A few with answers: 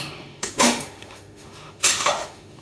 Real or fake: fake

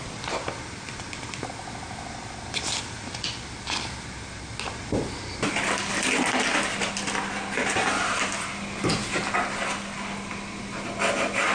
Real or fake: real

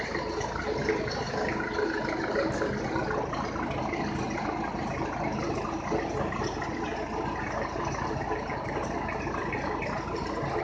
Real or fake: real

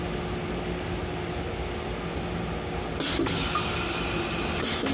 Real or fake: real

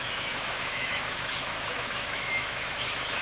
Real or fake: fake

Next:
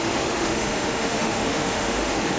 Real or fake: fake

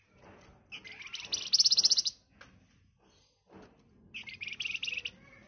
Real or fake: real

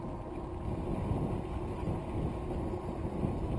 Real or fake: real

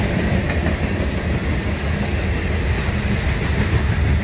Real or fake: real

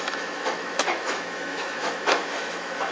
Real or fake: fake